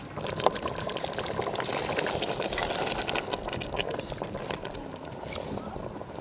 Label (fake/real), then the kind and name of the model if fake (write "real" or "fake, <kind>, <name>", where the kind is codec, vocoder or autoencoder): real